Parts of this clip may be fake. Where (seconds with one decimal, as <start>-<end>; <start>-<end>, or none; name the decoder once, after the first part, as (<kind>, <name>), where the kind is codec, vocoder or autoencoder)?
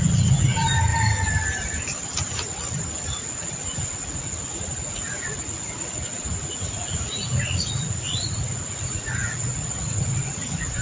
0.0-0.9 (vocoder, Vocos); 3.2-10.8